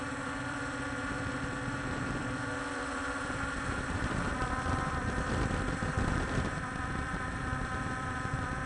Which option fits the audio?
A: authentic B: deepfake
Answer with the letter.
B